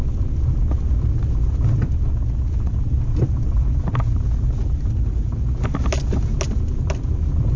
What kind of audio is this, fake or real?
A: real